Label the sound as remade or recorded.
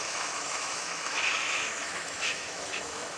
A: remade